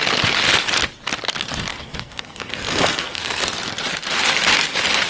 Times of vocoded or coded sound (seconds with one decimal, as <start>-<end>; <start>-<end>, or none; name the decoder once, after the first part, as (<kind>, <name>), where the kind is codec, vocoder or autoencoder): 1.7-3.4 (codec, SNAC)